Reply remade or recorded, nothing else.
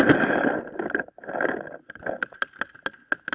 recorded